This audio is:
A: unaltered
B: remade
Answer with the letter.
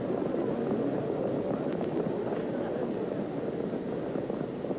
A